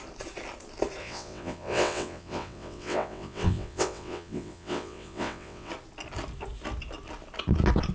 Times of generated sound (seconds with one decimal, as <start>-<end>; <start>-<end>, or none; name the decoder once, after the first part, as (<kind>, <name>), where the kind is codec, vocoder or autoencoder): 1.0-5.7 (vocoder, WaveNeXt)